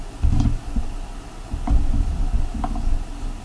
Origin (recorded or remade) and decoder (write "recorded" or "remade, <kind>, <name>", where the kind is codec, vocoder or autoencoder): recorded